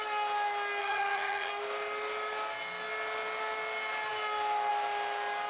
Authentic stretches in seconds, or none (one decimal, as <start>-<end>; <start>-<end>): 0.0-0.8; 1.5-5.5